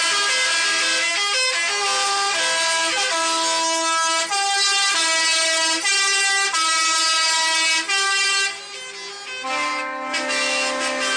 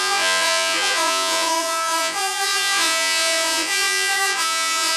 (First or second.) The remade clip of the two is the second